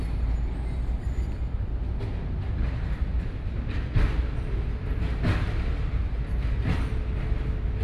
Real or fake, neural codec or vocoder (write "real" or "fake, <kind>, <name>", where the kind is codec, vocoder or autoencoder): real